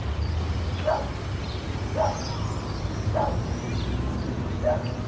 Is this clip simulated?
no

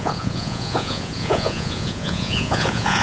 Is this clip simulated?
yes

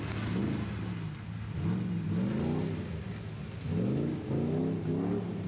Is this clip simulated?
no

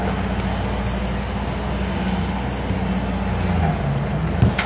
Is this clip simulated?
no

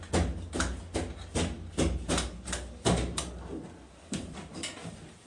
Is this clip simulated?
no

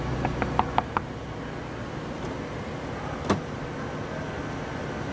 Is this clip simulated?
no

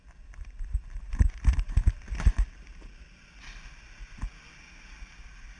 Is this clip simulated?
no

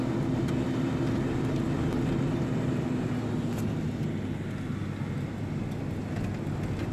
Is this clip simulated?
no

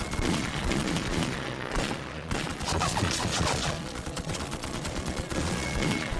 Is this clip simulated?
yes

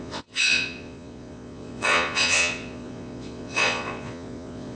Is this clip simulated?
yes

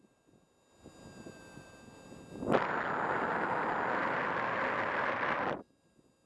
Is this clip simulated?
no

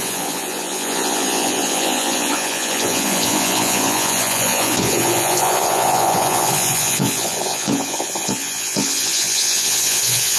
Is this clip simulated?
yes